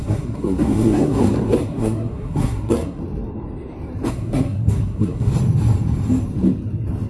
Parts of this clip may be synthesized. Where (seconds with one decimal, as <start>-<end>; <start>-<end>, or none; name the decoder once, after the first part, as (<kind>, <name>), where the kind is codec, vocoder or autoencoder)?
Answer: 0.0-3.0 (codec, SNAC); 4.1-5.3